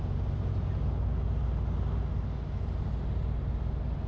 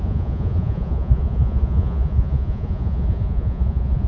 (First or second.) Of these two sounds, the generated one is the second